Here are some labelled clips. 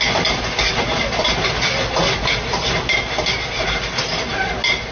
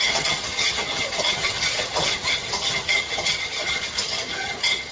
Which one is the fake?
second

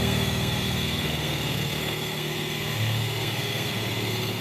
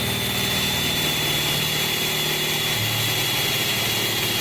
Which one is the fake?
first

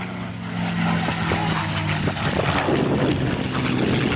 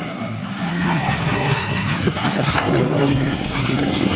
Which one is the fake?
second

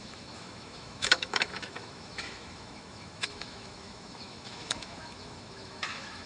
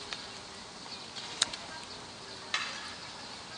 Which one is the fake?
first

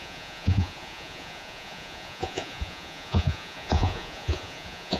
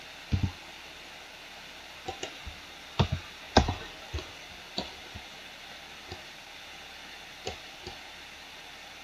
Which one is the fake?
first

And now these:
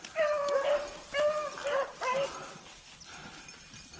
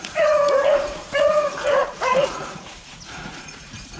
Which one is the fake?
second